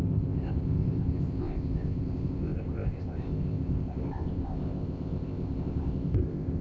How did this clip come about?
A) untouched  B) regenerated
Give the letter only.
B